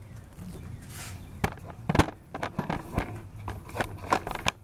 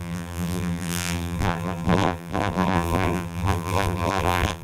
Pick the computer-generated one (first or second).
second